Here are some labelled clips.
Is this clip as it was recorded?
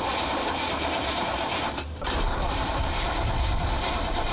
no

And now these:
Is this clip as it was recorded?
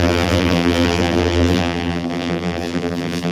no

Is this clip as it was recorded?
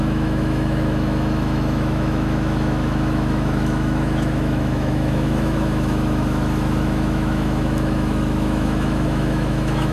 no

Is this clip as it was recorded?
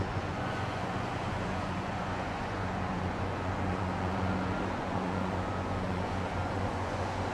no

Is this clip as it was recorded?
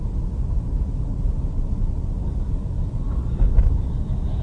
yes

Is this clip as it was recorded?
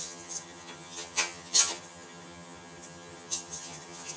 no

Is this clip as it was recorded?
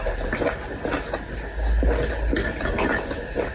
yes